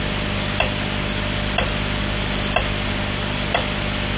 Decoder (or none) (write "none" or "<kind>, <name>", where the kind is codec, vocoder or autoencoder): none